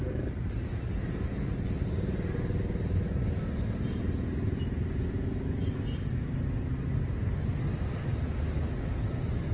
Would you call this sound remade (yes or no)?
no